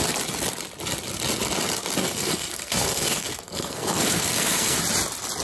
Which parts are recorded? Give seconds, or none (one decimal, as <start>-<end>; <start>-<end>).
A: 0.0-2.0; 4.8-5.4